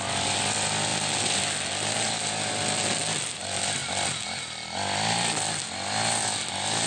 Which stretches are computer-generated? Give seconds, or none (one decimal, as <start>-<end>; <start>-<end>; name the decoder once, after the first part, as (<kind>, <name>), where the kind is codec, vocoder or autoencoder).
0.9-1.4 (vocoder, BigVGAN v2); 3.8-4.4